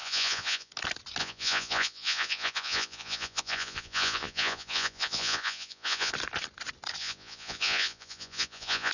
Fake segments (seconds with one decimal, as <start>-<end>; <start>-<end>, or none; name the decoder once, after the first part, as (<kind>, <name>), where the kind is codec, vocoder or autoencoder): 0.0-0.7 (vocoder, Vocos); 1.2-6.1; 7.0-8.9